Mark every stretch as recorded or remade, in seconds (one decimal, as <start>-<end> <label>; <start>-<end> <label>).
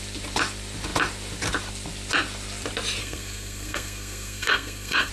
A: 0.0-3.0 recorded; 3.0-5.1 remade